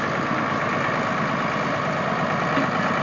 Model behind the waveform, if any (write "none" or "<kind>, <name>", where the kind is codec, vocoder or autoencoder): none